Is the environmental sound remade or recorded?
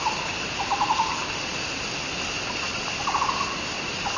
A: recorded